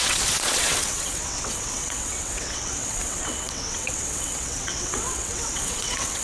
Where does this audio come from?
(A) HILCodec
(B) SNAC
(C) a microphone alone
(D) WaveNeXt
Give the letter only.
D